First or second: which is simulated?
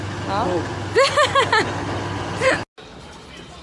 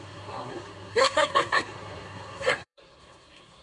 second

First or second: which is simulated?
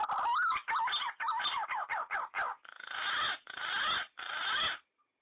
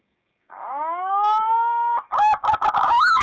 second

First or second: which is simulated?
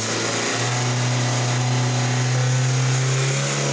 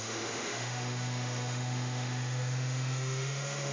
second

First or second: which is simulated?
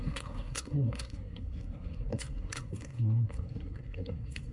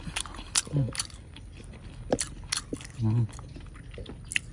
first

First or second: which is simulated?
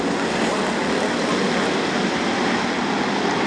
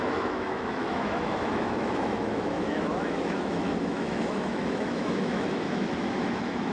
second